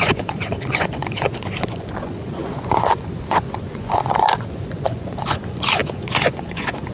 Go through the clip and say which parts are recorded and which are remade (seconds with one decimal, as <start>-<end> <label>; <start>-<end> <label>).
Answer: 0.0-6.9 remade